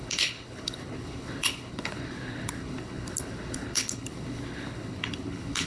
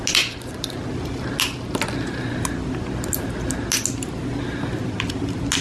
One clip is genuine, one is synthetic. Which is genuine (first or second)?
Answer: second